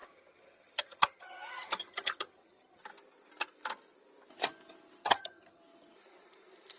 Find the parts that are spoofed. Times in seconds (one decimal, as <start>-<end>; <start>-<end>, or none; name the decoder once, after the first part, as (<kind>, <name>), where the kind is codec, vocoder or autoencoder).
0.0-2.8 (vocoder, HiFi-GAN); 5.0-5.6